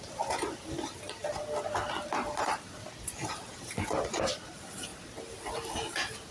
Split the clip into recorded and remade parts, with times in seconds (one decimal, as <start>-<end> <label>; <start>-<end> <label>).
0.0-6.3 recorded